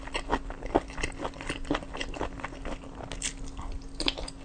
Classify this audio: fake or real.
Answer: real